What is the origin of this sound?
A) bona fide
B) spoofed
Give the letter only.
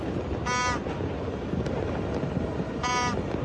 B